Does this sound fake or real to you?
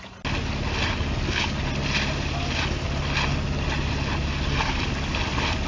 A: real